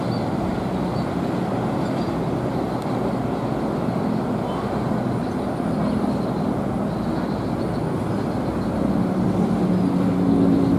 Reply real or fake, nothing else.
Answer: real